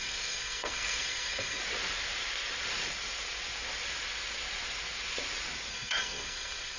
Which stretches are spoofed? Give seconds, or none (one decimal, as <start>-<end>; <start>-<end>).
0.0-1.6; 5.7-6.8

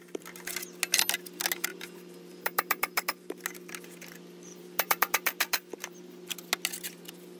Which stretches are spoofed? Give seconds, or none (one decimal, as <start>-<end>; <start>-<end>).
1.7-3.0; 4.5-6.0

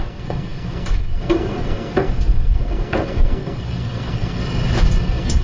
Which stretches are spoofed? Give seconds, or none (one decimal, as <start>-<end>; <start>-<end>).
0.0-4.4; 5.0-5.4

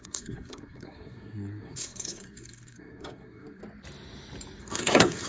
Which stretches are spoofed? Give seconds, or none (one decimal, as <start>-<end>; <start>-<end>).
0.0-3.6; 4.6-5.3

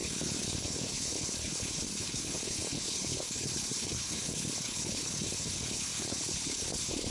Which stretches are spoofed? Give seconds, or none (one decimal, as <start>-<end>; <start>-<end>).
0.0-7.1

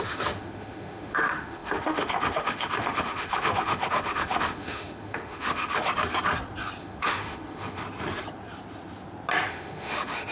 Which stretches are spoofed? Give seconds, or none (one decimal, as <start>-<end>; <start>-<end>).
0.0-5.9; 6.8-7.8; 9.5-10.3

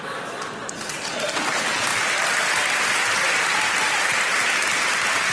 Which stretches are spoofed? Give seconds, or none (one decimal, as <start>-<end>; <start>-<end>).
none

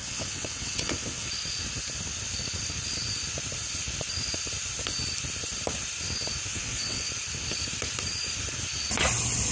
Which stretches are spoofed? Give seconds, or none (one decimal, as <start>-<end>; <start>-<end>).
0.0-1.3; 6.5-7.1